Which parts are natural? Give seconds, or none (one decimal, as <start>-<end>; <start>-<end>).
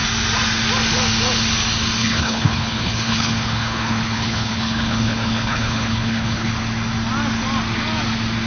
0.0-2.0; 6.5-8.5